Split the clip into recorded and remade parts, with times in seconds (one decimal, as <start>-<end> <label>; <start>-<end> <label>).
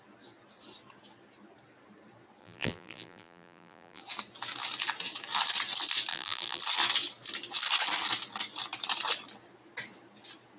0.0-2.4 recorded; 2.4-4.0 remade; 4.0-6.1 recorded; 6.1-6.6 remade; 6.6-10.6 recorded